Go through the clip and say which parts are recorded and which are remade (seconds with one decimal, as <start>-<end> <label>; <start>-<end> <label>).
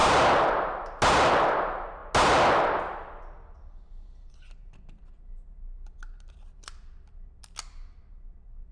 0.0-8.7 recorded